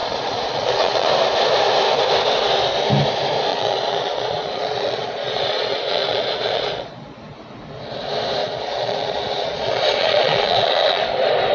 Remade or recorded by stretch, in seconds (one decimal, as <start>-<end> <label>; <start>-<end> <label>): 0.0-1.1 remade; 1.1-3.5 recorded; 3.5-7.2 remade; 7.2-8.4 recorded; 8.4-11.0 remade; 11.0-11.5 recorded